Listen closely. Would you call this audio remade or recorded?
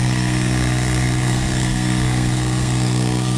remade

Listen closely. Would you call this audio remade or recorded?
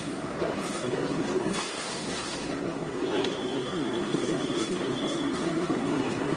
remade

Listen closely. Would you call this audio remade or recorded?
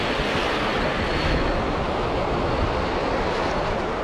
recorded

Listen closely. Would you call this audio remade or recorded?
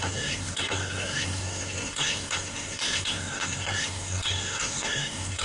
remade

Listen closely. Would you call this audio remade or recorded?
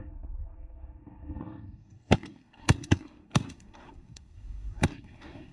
remade